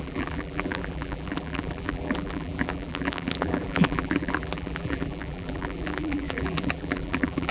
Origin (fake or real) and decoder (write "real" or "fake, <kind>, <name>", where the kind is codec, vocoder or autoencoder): fake, vocoder, BigVGAN v2